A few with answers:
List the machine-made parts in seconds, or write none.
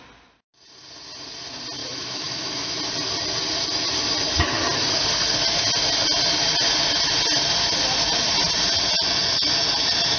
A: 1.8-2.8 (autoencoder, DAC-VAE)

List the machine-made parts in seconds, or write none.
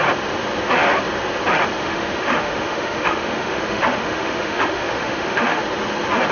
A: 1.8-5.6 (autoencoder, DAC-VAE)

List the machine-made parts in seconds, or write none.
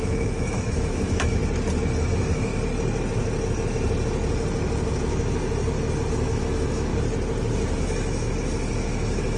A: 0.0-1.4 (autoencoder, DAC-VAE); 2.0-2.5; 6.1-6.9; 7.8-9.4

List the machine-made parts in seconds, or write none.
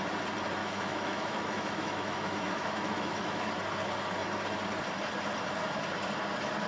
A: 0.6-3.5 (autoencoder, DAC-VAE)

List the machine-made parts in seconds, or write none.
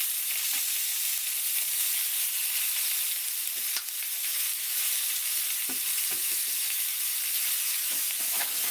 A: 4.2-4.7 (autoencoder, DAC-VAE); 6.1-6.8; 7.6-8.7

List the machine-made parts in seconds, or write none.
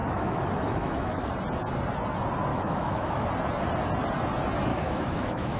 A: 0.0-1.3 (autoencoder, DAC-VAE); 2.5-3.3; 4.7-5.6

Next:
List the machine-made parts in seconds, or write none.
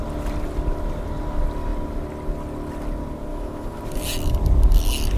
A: 3.3-3.8 (autoencoder, DAC-VAE)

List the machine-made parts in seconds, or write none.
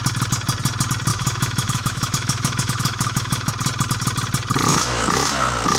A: 1.1-3.5 (autoencoder, DAC-VAE); 4.7-5.3